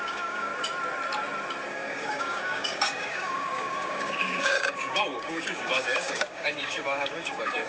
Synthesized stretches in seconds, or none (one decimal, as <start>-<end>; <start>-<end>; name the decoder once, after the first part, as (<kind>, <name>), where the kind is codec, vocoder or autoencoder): 0.0-0.5 (codec, DAC); 1.7-7.7